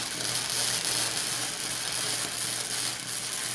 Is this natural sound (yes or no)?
yes